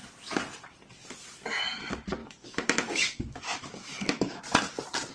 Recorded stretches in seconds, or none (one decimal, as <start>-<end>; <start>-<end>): 0.0-2.2; 4.4-5.1